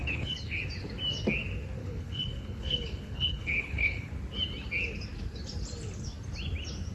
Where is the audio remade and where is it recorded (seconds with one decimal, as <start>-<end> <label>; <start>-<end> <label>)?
0.0-0.6 remade; 0.6-1.8 recorded; 1.8-4.1 remade; 4.1-6.9 recorded